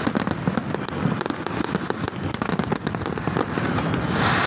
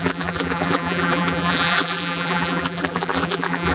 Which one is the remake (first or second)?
second